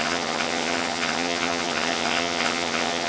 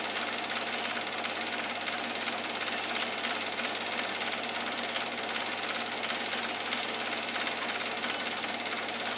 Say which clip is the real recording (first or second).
second